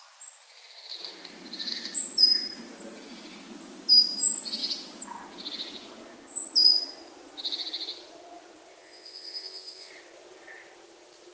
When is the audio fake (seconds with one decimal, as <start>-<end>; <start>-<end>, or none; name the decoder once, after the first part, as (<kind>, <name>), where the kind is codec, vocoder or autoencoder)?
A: 8.8-9.9 (vocoder, Vocos)